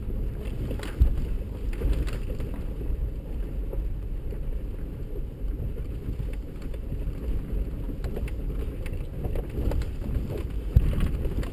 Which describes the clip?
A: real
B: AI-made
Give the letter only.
A